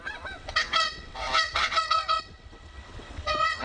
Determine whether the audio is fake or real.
fake